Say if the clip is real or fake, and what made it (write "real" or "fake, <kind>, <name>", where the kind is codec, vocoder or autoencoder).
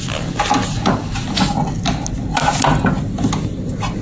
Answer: real